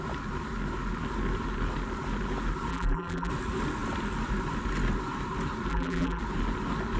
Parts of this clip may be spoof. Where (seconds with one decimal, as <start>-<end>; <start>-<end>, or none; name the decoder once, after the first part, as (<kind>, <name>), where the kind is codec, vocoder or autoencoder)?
2.7-3.3 (vocoder, BigVGAN v2); 5.7-6.2